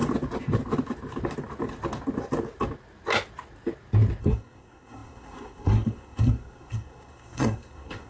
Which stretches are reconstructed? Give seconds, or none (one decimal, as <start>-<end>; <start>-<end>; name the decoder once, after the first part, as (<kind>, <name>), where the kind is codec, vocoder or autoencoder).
4.2-8.1 (codec, SNAC)